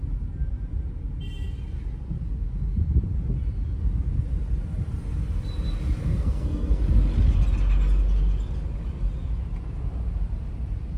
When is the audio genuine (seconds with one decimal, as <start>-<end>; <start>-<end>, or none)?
0.0-6.0; 6.8-11.0

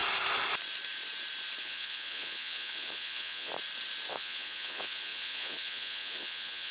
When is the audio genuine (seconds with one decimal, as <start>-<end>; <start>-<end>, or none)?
0.0-1.6; 3.5-4.1

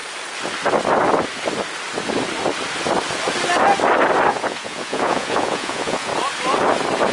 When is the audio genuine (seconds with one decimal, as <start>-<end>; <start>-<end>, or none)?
0.0-4.3; 6.1-7.1

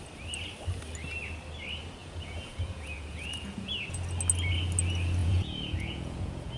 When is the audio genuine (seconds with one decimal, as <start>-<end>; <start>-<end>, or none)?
0.0-2.0; 3.7-5.2

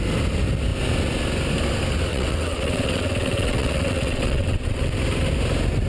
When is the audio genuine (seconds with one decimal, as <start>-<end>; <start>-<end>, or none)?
0.0-2.1; 4.9-5.9